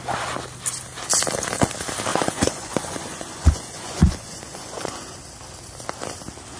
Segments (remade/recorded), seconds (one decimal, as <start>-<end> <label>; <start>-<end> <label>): 0.0-2.1 recorded; 2.1-5.2 remade; 5.2-6.6 recorded